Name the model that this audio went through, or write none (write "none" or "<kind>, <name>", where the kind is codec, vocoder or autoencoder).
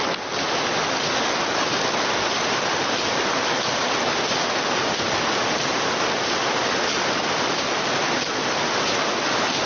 none